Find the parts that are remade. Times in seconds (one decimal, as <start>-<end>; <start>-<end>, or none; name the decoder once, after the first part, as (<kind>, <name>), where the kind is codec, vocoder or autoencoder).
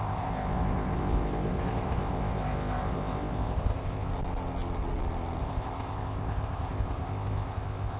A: 0.0-4.1 (codec, ZipCodec); 5.4-8.0